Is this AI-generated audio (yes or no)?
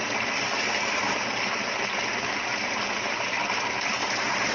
no